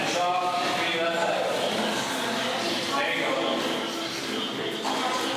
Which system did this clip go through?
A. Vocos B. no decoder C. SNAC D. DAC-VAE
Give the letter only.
B